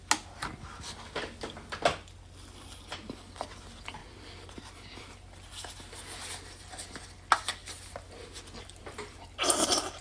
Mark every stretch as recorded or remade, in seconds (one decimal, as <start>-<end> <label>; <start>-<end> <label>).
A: 0.0-4.0 recorded; 4.0-5.7 remade; 5.7-10.0 recorded